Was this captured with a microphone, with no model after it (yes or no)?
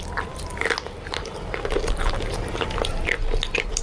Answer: yes